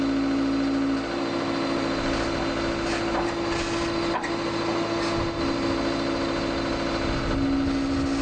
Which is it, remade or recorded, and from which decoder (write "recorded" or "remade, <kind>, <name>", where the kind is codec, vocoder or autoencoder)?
recorded